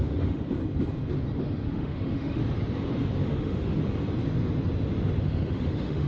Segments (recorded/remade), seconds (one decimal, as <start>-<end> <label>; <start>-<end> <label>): 0.0-0.4 remade; 0.4-1.4 recorded; 1.4-2.4 remade; 2.4-3.4 recorded; 3.4-3.8 remade; 3.8-5.2 recorded; 5.2-6.1 remade